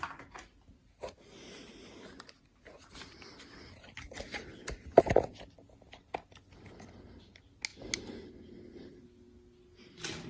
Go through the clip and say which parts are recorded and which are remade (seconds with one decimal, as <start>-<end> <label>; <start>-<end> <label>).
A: 0.0-10.3 recorded

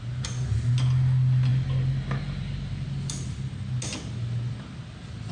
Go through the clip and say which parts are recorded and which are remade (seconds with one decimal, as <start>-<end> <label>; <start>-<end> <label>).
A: 0.0-5.3 recorded

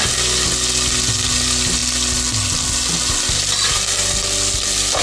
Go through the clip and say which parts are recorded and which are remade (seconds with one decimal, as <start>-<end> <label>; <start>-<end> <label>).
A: 0.0-5.0 recorded

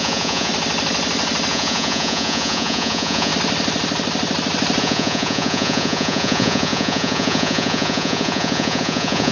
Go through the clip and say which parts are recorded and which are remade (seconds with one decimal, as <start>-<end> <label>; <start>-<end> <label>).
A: 0.0-0.5 remade; 0.5-1.5 recorded; 1.5-3.3 remade; 3.3-4.8 recorded; 4.8-9.3 remade

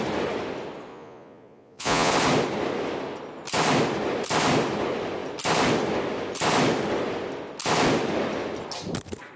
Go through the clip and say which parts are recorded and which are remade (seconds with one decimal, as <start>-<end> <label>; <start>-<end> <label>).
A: 0.0-0.9 recorded; 0.9-2.1 remade; 2.1-9.4 recorded

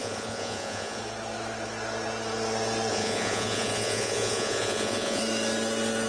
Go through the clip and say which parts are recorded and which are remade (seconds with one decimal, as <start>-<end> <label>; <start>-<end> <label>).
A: 0.0-1.0 remade; 1.0-2.9 recorded; 2.9-5.2 remade; 5.2-6.1 recorded

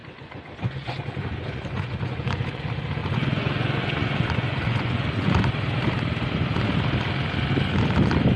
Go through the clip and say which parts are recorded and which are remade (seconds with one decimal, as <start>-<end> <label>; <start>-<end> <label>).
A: 0.0-2.6 remade; 2.6-3.0 recorded; 3.0-5.5 remade; 5.5-8.4 recorded

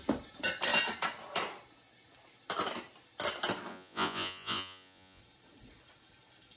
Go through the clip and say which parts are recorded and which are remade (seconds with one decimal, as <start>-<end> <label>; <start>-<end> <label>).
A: 0.0-3.7 recorded; 3.7-5.2 remade; 5.2-6.6 recorded